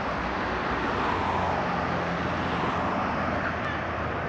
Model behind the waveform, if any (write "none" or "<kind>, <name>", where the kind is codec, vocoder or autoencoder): none